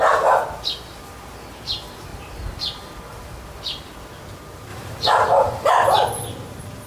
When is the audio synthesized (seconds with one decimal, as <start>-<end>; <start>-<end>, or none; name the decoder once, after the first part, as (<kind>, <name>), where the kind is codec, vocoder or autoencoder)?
2.1-3.9 (vocoder, BigVGAN v2); 4.7-5.7